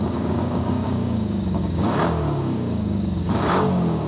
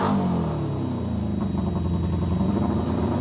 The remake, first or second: first